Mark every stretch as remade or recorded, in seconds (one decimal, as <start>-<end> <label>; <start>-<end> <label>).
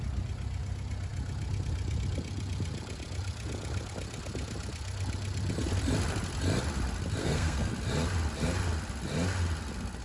0.0-7.2 recorded; 7.2-7.7 remade; 7.7-10.0 recorded